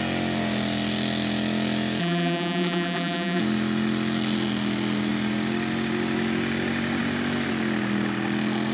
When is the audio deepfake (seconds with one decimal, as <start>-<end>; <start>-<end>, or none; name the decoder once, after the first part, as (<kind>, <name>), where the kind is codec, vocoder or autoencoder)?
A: 2.0-3.4 (vocoder, BigVGAN v2)